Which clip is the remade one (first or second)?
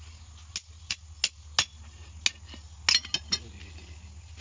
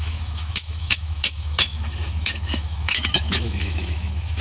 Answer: second